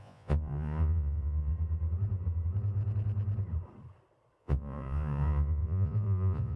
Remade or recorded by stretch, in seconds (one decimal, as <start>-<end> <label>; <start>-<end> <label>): 0.0-1.5 remade; 1.5-4.4 recorded; 4.4-6.6 remade